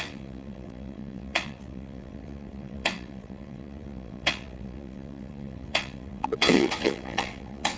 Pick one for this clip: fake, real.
fake